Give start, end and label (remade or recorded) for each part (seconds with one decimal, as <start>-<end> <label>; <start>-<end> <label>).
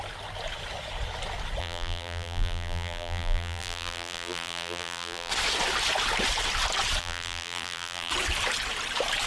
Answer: 0.0-1.6 recorded; 1.6-5.3 remade; 5.3-7.0 recorded; 7.0-8.1 remade; 8.1-9.3 recorded